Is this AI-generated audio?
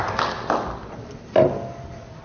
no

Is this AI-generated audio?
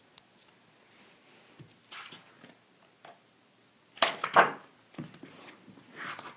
no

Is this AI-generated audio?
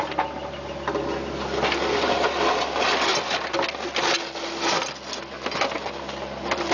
no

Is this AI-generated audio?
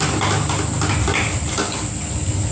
no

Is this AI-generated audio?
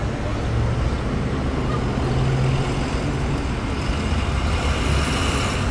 no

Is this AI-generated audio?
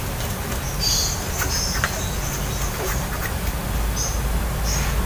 no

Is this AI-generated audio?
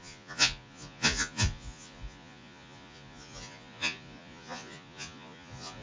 yes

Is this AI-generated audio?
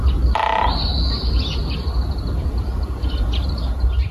no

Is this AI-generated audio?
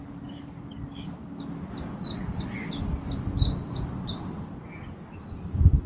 no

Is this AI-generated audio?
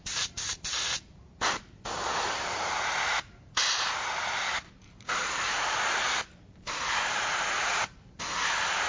yes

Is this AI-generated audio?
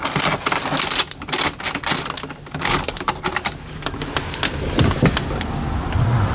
no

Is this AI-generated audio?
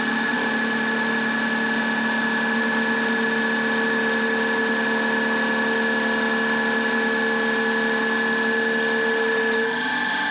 no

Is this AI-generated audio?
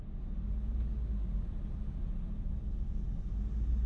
no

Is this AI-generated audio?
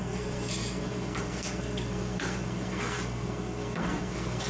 yes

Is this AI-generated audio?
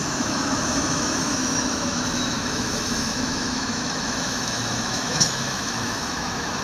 yes